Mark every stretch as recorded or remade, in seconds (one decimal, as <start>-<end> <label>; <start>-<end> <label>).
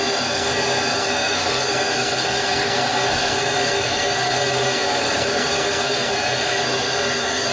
0.0-7.5 remade